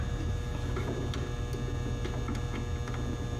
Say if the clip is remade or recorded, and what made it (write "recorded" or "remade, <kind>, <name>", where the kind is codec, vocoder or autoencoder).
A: recorded